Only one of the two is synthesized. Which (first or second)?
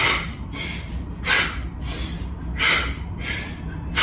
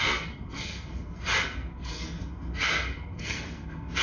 second